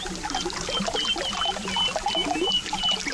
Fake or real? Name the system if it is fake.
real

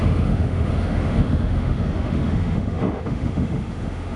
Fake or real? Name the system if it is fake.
fake, autoencoder, DAC-VAE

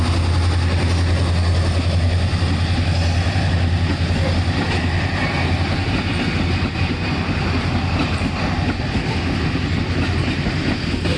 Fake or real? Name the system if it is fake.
real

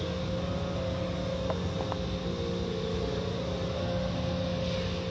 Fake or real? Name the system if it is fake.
real